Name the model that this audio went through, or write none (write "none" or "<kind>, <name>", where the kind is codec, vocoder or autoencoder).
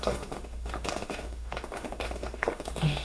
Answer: autoencoder, DAC-VAE